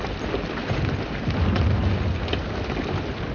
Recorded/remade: recorded